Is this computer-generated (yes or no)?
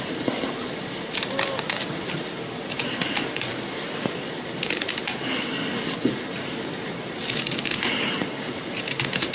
no